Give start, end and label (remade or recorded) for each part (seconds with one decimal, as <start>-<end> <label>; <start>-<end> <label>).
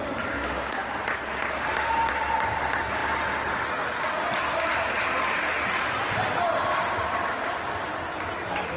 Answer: 0.0-8.8 recorded